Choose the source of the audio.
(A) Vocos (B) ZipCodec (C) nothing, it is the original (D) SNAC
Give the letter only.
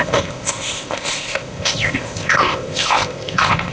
B